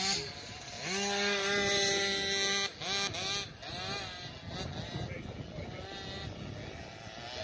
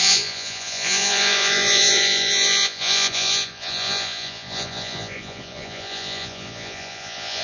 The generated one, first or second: second